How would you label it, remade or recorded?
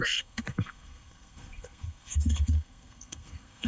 remade